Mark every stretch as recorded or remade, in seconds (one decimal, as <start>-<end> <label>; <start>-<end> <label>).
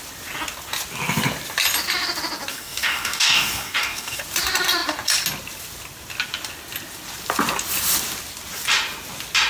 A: 0.0-2.5 recorded; 2.5-4.2 remade; 4.2-9.5 recorded